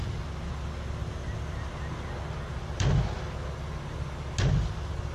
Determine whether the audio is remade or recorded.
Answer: recorded